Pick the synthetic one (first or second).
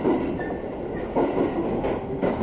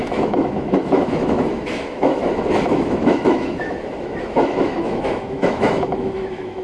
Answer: second